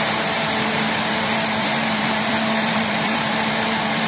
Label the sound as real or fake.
fake